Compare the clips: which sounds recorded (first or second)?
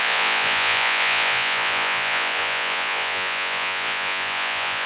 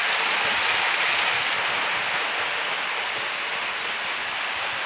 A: second